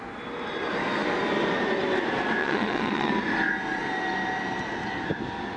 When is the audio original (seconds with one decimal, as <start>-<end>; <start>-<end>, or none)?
0.0-2.4; 3.1-5.6

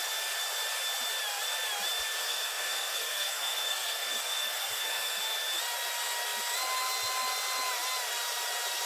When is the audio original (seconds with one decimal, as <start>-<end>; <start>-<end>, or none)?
0.0-2.2; 5.2-8.9

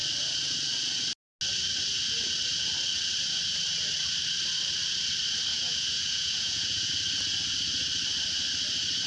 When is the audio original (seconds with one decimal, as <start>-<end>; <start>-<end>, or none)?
0.0-5.5; 6.9-9.1